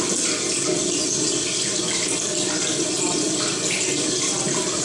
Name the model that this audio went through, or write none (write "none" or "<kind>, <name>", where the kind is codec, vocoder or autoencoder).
none